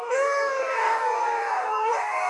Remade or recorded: remade